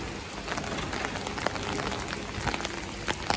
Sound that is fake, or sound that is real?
real